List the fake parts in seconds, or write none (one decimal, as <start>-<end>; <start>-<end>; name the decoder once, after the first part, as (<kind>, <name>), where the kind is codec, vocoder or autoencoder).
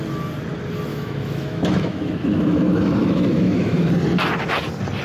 0.9-3.9 (autoencoder, DAC-VAE)